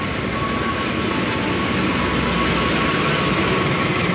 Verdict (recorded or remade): recorded